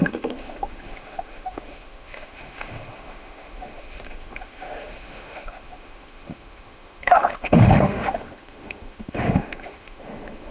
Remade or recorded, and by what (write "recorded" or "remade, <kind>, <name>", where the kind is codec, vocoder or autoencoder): remade, autoencoder, DAC-VAE